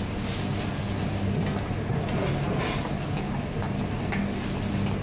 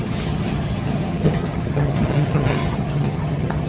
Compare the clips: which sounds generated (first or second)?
second